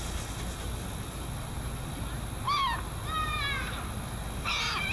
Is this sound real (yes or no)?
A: yes